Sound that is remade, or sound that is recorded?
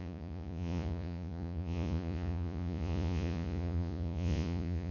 remade